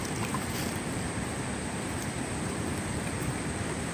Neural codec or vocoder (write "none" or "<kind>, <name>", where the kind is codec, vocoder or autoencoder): vocoder, BigVGAN v2